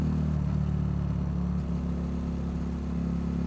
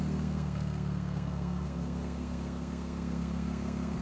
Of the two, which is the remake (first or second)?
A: second